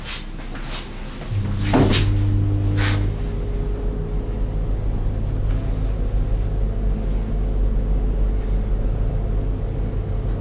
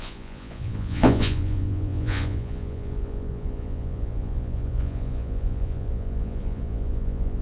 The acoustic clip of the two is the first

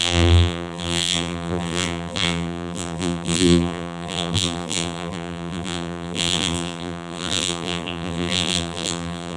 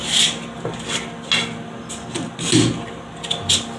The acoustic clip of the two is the second